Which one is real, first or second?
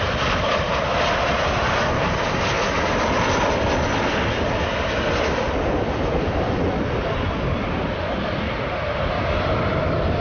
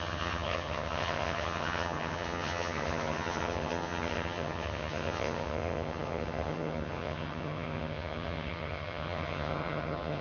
first